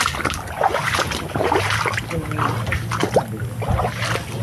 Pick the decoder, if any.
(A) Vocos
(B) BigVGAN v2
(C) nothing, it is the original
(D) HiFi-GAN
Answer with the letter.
C